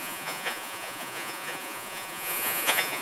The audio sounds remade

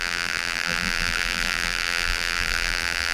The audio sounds remade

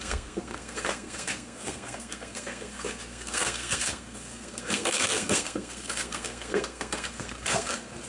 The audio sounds remade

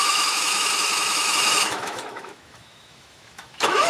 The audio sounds remade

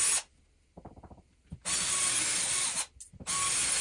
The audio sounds recorded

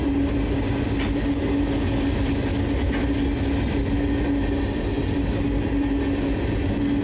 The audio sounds recorded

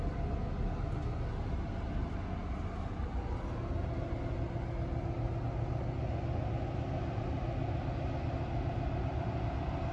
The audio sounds recorded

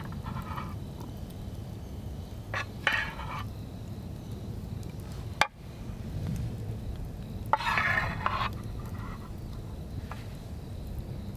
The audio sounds recorded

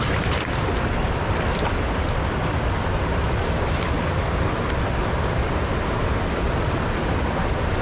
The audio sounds recorded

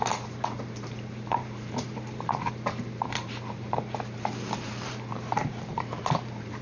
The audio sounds remade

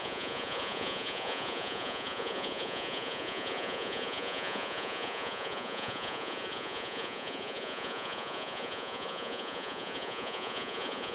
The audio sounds remade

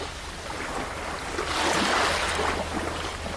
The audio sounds recorded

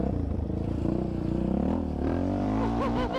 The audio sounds remade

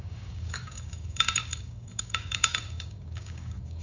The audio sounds remade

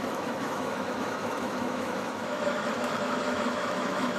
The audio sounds remade